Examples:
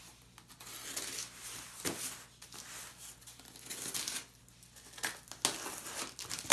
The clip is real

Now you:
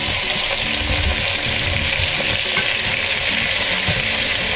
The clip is real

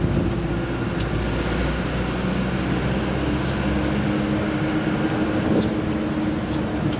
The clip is real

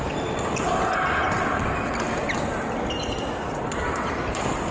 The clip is real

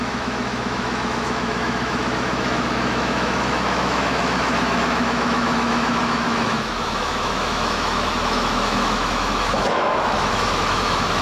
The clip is fake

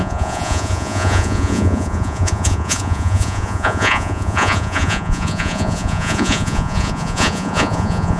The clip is fake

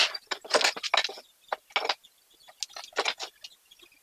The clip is real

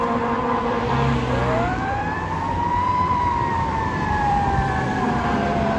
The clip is fake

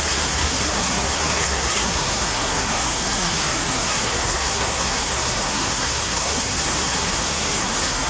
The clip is fake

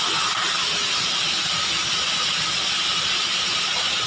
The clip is real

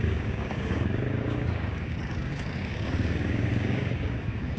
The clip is fake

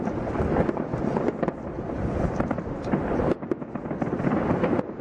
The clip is real